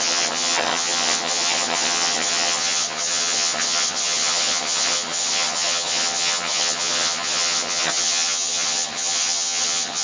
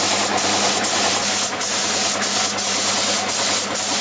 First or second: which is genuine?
second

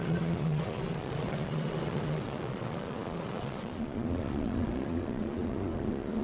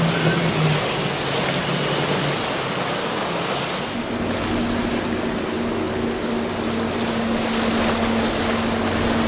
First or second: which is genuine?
second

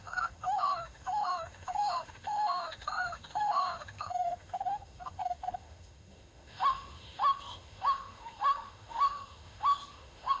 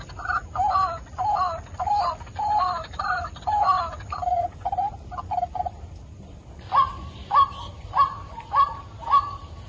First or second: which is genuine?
second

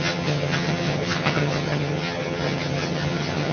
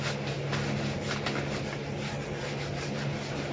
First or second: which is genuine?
second